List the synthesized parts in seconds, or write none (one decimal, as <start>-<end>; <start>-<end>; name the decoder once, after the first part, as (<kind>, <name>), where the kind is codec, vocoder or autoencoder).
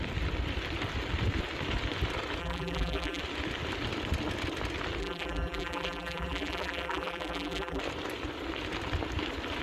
2.4-3.2 (vocoder, BigVGAN v2); 5.0-7.8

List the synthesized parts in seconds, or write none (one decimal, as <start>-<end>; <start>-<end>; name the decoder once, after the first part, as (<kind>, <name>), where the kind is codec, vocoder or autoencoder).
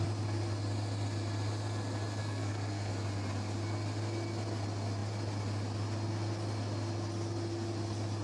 2.2-2.9 (codec, SNAC)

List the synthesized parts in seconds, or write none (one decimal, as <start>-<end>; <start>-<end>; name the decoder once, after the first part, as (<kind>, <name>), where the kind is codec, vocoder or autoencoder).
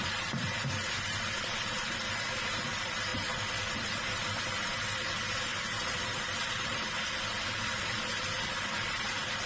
3.1-4.4 (vocoder, BigVGAN v2); 5.5-7.8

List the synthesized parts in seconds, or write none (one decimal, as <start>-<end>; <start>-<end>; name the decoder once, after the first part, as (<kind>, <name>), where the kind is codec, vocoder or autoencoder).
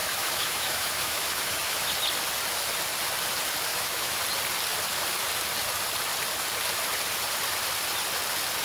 0.0-1.9 (autoencoder, DAC-VAE); 3.7-4.2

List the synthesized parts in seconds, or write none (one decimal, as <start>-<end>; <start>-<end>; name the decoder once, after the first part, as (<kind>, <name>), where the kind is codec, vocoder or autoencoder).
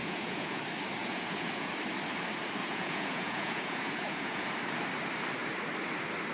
0.0-0.6 (vocoder, Vocos); 1.0-1.7; 2.6-4.5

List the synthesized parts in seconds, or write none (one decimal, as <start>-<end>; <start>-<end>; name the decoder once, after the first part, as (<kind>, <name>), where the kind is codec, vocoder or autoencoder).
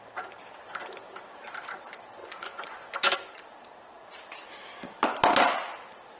2.2-2.9 (vocoder, Vocos)